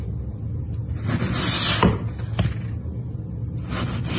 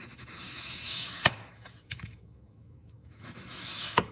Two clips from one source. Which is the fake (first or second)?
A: second